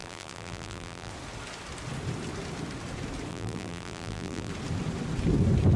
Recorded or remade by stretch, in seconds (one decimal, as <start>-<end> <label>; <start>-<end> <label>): 0.0-1.1 remade; 1.1-3.3 recorded; 3.3-4.5 remade; 4.5-5.8 recorded